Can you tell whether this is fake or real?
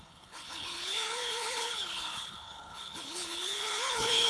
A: fake